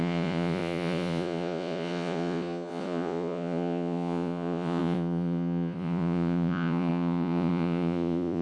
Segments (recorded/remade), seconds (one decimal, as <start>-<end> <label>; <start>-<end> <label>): 0.0-8.4 remade